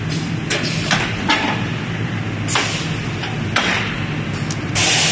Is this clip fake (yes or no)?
no